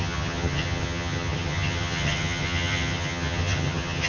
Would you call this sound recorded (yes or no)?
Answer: no